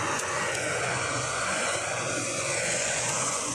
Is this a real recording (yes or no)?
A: no